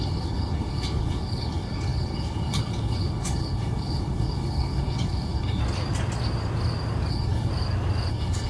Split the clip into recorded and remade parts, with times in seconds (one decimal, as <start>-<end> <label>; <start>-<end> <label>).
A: 0.0-5.6 remade; 5.6-7.1 recorded; 7.1-7.5 remade; 7.5-8.1 recorded; 8.1-8.5 remade